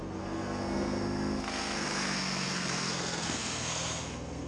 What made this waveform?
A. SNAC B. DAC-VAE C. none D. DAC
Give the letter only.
A